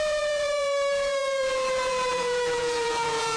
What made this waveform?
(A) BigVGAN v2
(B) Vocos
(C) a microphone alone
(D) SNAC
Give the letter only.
B